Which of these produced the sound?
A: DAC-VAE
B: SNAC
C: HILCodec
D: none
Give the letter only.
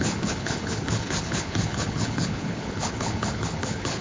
C